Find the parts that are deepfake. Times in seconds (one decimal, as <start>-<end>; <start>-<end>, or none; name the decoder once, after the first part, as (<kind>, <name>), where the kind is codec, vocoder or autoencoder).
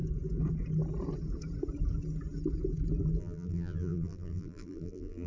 3.2-5.3 (vocoder, BigVGAN v2)